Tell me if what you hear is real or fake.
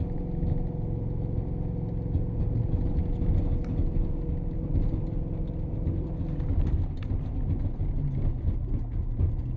real